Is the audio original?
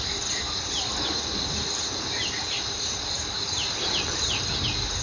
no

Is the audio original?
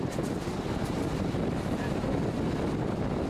yes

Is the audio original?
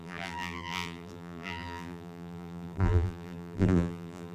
no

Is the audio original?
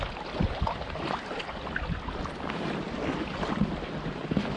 yes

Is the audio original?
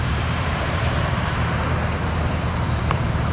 no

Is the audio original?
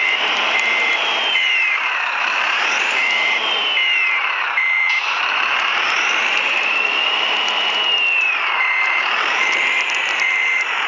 no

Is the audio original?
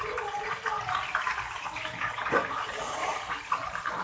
no